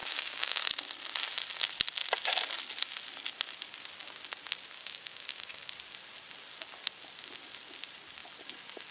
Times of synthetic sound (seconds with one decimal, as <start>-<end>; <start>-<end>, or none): 0.0-0.6; 4.8-5.7